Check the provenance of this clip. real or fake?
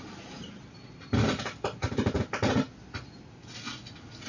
real